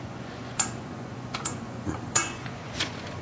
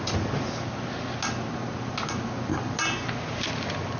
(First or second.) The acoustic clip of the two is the second